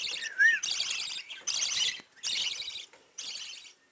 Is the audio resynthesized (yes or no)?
no